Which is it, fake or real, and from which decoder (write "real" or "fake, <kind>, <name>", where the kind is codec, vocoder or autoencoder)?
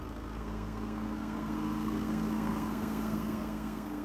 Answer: fake, codec, SNAC